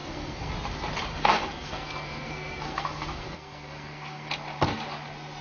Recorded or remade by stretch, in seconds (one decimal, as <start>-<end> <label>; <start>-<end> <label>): 0.0-0.5 remade; 0.5-1.1 recorded; 1.1-4.3 remade; 4.3-5.4 recorded